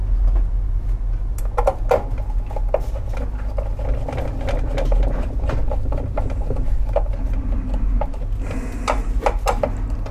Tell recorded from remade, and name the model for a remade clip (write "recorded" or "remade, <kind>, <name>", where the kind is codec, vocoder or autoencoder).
recorded